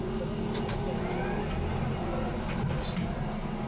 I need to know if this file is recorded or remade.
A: recorded